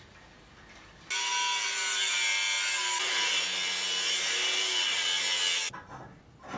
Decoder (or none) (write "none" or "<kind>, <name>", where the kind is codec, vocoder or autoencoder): none